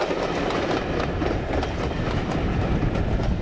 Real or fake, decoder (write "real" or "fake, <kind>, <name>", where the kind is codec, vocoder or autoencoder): real